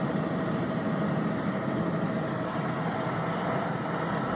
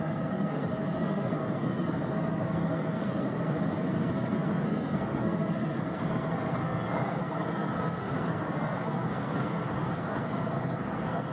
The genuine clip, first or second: first